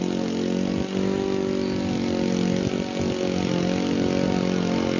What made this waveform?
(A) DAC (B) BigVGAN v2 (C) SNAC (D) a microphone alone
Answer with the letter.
D